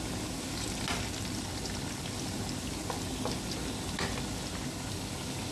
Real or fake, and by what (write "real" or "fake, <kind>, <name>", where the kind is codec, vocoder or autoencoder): real